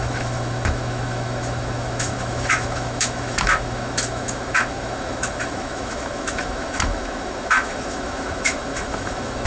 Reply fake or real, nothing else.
fake